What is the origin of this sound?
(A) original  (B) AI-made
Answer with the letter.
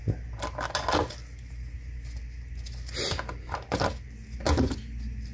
A